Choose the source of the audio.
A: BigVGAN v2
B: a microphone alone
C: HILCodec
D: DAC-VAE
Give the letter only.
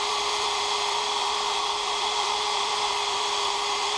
A